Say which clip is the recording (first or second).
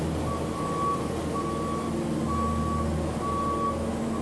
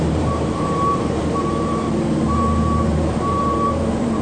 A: first